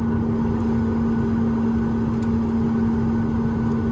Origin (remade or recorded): recorded